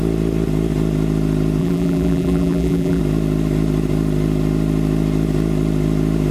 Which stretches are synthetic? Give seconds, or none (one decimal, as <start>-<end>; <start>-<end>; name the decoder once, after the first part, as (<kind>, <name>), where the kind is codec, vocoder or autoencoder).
1.6-3.0 (vocoder, BigVGAN v2)